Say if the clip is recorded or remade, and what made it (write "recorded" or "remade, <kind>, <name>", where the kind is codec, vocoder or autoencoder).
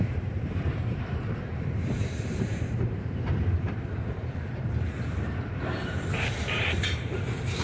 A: remade, vocoder, BigVGAN v2